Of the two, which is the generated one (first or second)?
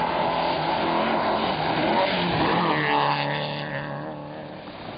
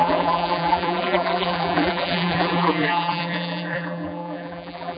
second